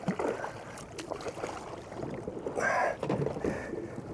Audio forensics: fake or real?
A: real